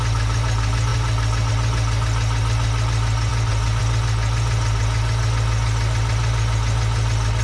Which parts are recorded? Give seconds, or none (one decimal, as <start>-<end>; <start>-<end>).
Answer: 0.0-7.4